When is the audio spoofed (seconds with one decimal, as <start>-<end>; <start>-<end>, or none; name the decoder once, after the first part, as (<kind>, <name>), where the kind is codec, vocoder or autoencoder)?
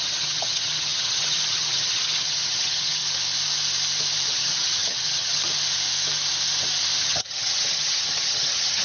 0.0-3.0 (vocoder, HiFi-GAN); 4.3-5.4; 7.0-8.8